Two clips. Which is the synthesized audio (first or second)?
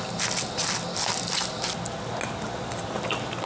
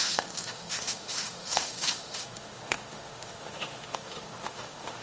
second